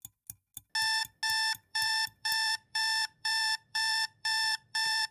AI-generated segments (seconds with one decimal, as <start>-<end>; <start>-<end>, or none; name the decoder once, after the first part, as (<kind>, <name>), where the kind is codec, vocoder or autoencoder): 1.7-5.1 (vocoder, BigVGAN v2)